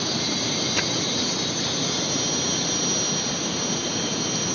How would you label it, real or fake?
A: real